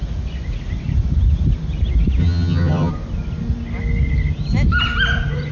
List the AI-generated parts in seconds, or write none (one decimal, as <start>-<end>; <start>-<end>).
2.2-2.9